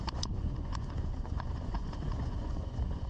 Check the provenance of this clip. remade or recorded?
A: remade